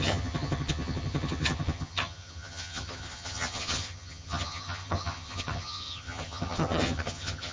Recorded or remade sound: remade